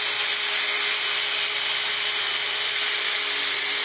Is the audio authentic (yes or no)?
yes